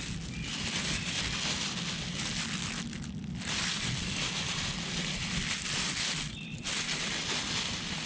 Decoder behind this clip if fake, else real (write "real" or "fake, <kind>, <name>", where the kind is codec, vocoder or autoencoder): real